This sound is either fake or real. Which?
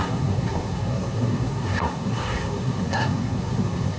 fake